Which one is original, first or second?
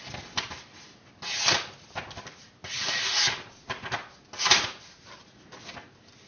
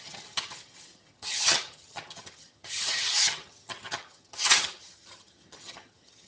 first